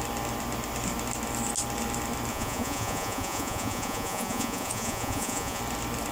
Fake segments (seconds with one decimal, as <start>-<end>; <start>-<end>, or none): 2.3-5.6